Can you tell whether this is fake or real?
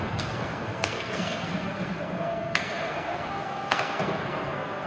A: fake